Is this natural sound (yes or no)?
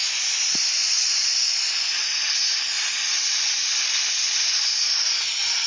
yes